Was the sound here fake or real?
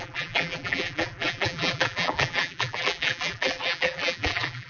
fake